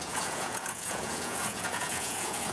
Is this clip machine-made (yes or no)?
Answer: yes